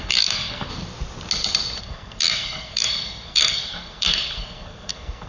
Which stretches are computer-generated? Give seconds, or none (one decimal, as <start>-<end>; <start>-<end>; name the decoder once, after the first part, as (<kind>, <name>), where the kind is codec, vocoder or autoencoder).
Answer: 0.0-0.7 (codec, SNAC); 1.8-5.3